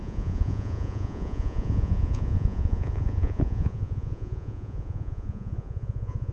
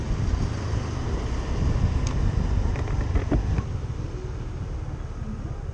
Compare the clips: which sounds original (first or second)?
second